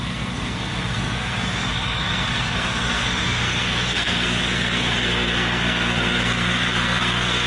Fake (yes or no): yes